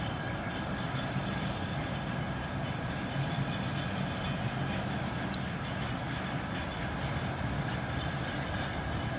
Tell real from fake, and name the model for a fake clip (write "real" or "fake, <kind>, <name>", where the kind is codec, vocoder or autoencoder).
real